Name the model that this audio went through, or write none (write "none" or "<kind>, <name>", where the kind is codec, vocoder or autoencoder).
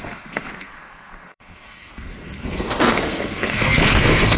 codec, SNAC